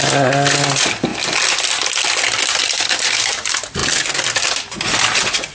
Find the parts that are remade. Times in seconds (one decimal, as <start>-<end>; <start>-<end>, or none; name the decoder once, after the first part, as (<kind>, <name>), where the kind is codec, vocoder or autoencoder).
none